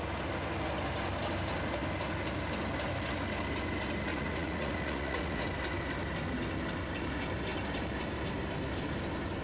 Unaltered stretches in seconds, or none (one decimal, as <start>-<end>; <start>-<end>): 0.0-4.1; 5.4-9.4